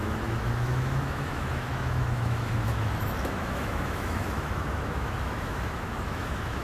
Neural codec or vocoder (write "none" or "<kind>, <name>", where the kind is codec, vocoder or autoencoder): autoencoder, DAC-VAE